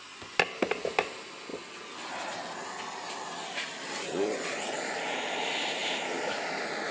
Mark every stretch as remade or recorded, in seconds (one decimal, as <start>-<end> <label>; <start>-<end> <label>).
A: 0.0-6.9 recorded